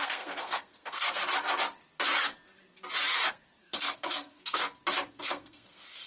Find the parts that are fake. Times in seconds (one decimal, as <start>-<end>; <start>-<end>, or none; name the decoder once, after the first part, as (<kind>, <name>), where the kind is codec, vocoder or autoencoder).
0.0-1.2 (codec, SNAC); 3.3-4.6; 5.1-6.1